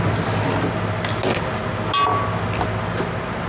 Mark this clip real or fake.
real